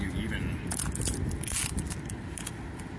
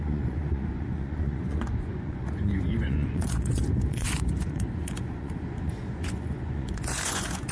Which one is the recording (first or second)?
first